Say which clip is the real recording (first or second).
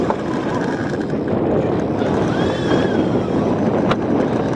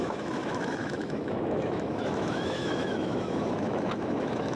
first